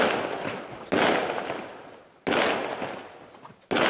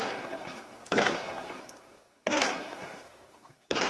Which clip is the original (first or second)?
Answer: first